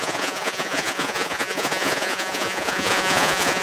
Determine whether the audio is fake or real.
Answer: fake